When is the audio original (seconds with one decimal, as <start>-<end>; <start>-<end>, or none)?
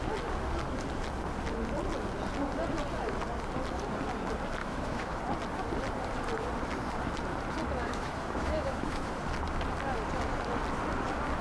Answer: 0.0-4.6; 5.2-7.8; 9.1-11.4